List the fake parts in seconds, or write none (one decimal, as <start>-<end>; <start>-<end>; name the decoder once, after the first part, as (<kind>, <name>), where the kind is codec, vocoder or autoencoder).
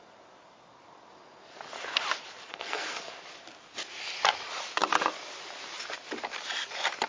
2.5-3.1 (codec, SNAC)